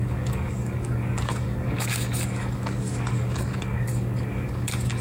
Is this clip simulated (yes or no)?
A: yes